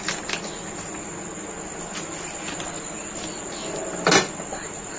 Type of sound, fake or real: real